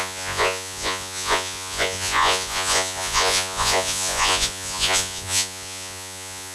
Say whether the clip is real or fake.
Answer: fake